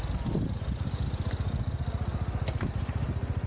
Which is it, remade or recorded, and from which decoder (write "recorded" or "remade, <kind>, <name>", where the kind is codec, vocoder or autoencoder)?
recorded